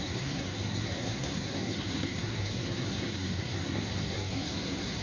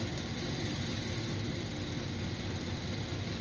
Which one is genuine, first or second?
second